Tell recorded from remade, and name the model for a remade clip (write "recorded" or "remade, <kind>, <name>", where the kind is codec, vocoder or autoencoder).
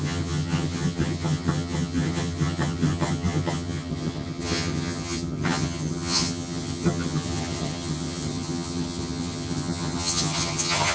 remade, vocoder, HiFi-GAN